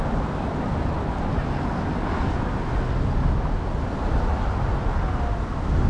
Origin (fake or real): real